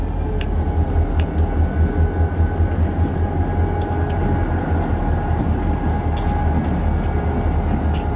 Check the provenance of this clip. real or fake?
real